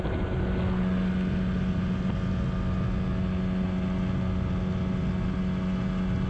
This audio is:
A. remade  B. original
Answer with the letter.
B